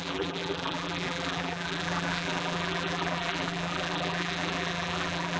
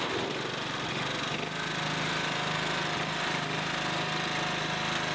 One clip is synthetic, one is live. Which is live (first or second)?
second